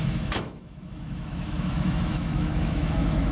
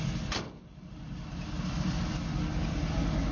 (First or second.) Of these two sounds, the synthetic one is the first